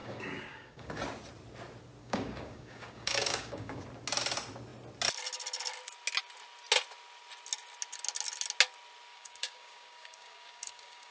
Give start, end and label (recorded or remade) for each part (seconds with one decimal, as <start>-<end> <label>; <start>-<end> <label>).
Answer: 0.0-1.0 remade; 1.0-2.0 recorded; 2.0-3.8 remade; 3.8-9.1 recorded; 9.1-11.1 remade

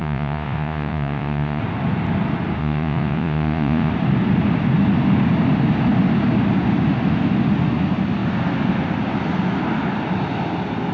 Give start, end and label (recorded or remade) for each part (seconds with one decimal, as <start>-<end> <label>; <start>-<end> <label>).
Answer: 0.0-1.6 remade; 1.6-2.6 recorded; 2.6-3.9 remade; 3.9-10.9 recorded

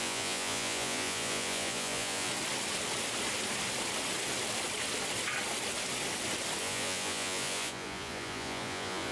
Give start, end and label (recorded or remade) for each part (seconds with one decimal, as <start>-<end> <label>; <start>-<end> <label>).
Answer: 0.0-2.3 remade; 2.3-6.6 recorded; 6.6-9.1 remade

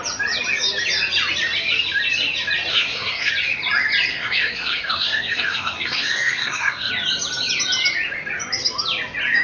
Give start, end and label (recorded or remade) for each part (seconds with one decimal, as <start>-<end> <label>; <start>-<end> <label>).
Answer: 0.0-2.7 recorded; 2.7-3.3 remade; 3.3-4.1 recorded; 4.1-6.9 remade; 6.9-9.4 recorded

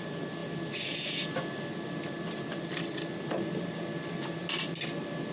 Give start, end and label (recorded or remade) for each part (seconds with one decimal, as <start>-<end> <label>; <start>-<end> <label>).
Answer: 0.0-5.3 recorded

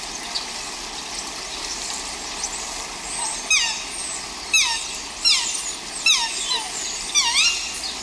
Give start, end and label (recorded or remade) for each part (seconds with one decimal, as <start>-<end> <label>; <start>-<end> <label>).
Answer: 0.0-8.0 recorded

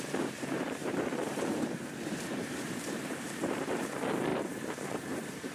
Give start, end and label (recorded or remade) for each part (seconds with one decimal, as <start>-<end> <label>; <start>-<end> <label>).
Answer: 0.0-0.8 recorded; 0.8-3.9 remade; 3.9-4.3 recorded; 4.3-5.5 remade